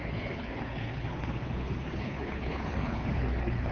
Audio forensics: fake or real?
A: fake